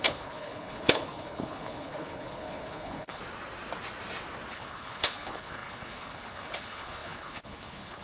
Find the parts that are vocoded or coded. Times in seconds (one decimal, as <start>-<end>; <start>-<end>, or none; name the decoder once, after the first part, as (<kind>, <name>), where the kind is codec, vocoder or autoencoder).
0.0-3.2 (codec, HILCodec); 4.5-8.0